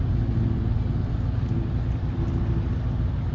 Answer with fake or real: real